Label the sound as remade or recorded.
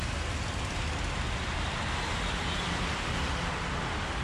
recorded